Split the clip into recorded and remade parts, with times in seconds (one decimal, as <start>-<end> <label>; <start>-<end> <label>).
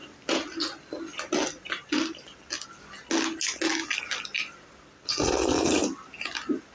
0.0-6.7 recorded